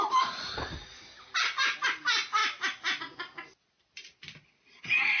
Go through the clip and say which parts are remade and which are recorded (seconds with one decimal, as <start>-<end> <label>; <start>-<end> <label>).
0.0-5.2 recorded